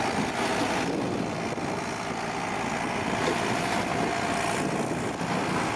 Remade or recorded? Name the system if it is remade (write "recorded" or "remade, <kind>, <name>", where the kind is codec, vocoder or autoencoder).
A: recorded